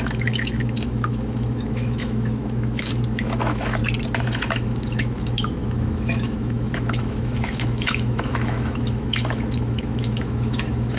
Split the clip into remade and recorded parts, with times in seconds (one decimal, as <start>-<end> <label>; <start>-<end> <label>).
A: 0.0-3.8 remade; 3.8-4.4 recorded; 4.4-11.0 remade